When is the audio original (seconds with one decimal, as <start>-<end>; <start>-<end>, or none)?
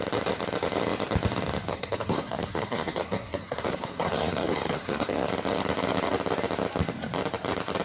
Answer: 0.0-1.7; 5.3-7.8